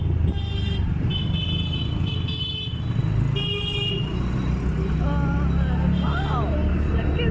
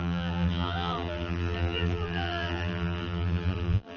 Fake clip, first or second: second